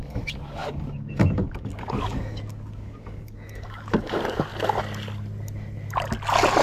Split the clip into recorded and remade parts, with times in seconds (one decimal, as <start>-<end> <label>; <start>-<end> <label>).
0.0-4.5 remade; 4.5-6.6 recorded